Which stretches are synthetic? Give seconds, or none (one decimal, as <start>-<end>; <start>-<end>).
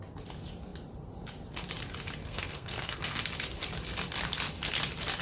2.2-3.2